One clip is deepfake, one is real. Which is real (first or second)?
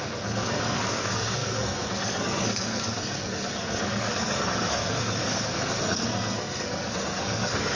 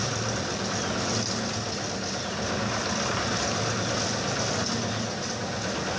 second